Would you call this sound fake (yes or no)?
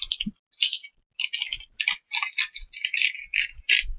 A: no